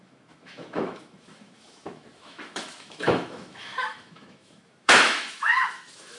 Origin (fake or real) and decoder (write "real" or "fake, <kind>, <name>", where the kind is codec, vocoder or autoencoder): fake, autoencoder, DAC-VAE